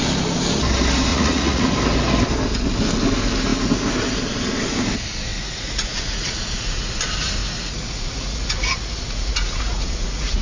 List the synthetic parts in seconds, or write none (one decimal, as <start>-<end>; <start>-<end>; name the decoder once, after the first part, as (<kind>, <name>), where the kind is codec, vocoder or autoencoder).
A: 1.1-1.7 (vocoder, Vocos); 5.3-6.9; 7.4-10.4